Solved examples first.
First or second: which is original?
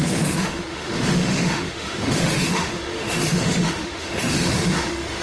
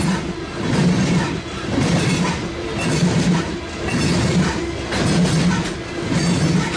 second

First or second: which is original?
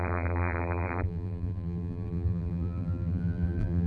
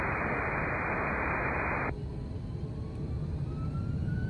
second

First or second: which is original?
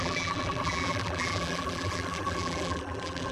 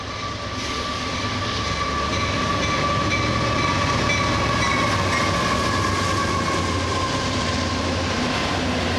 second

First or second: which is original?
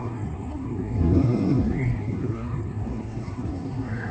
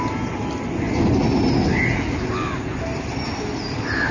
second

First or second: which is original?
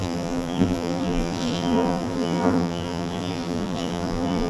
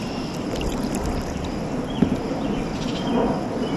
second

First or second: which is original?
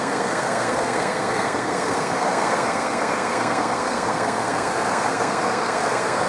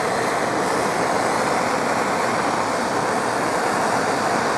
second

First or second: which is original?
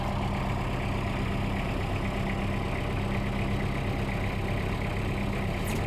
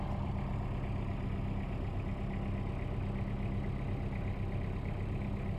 first